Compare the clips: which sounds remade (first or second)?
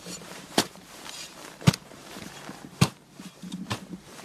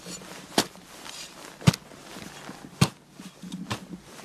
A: first